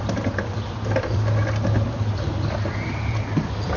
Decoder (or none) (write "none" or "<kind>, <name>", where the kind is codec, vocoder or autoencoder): vocoder, BigVGAN v2